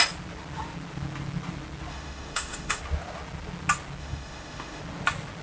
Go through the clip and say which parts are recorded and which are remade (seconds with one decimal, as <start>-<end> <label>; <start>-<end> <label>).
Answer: 0.0-1.9 recorded; 1.9-2.8 remade; 2.8-4.0 recorded; 4.0-4.8 remade; 4.8-5.4 recorded